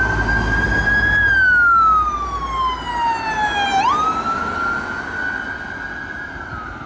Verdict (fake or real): real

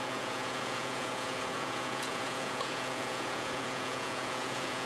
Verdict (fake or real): fake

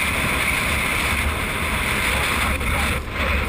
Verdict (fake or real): real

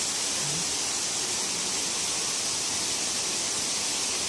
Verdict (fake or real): real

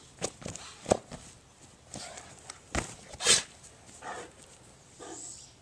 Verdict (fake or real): real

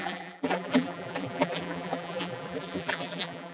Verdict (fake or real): fake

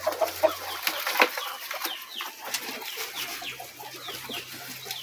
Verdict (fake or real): real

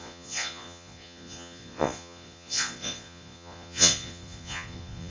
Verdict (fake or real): fake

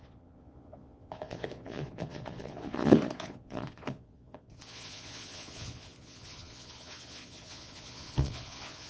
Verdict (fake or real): fake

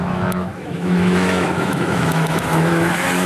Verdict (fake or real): fake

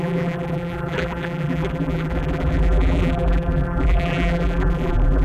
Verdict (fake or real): fake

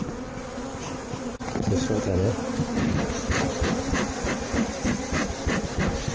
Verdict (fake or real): real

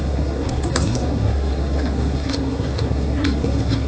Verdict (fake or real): fake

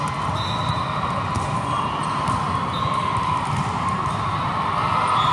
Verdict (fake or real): real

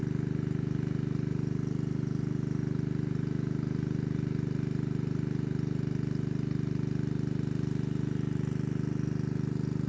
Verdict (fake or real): real